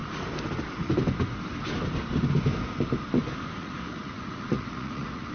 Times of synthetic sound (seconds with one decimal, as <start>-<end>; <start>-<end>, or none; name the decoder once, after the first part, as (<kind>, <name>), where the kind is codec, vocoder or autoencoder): 3.6-5.3 (vocoder, Vocos)